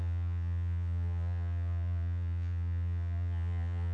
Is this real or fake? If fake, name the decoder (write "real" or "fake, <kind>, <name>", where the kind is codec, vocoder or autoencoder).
fake, vocoder, Vocos